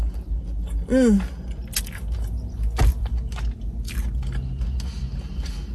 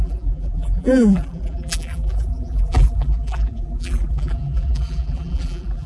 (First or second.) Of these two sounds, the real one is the first